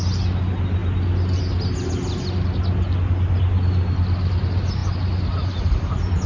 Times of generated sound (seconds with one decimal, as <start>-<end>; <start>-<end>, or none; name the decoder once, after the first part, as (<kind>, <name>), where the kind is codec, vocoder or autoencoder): none